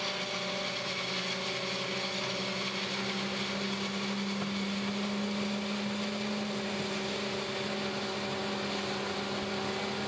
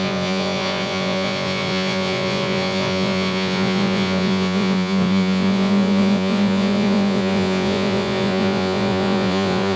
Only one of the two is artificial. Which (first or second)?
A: second